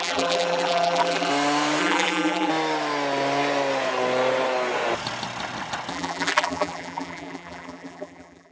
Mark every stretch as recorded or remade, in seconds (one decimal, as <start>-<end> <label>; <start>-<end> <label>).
0.0-1.3 remade; 1.3-1.8 recorded; 1.8-2.5 remade; 2.5-5.9 recorded; 5.9-8.5 remade